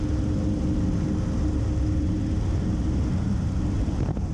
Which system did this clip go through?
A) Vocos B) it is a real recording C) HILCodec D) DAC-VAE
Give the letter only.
B